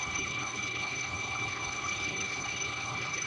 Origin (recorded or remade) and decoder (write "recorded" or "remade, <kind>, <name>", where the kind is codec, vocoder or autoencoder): remade, codec, HILCodec